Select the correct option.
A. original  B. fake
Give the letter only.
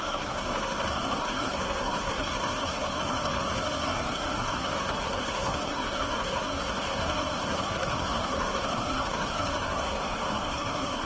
B